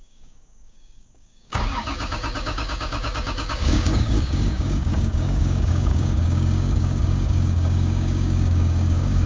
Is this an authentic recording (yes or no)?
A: no